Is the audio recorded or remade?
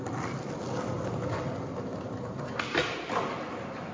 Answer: recorded